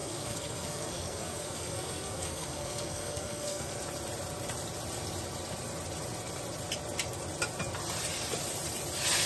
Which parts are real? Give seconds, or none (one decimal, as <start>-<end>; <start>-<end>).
3.7-9.3